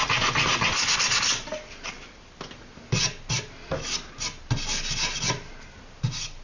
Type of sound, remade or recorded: recorded